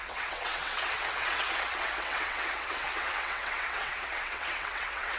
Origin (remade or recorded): remade